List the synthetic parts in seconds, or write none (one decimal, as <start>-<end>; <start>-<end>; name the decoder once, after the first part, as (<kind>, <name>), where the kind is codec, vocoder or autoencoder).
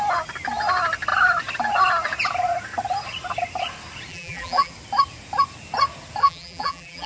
4.1-4.7 (vocoder, BigVGAN v2); 6.2-7.1